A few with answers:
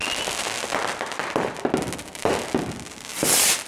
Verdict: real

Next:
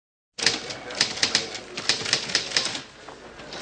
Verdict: real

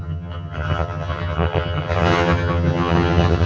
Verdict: fake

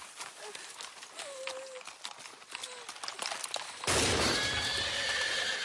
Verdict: real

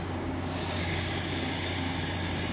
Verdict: fake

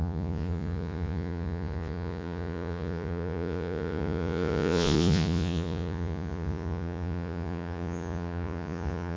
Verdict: fake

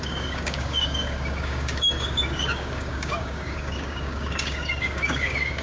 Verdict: fake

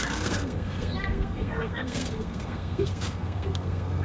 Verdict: fake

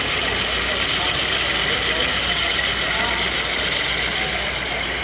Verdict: real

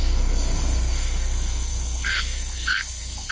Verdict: fake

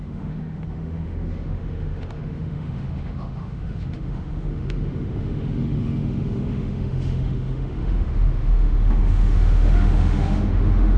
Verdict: fake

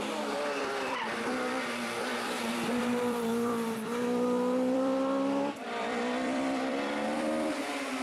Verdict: fake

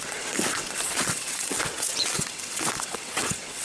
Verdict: fake